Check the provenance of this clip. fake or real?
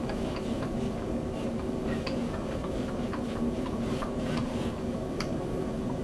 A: fake